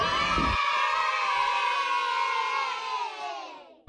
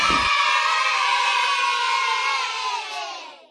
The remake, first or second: second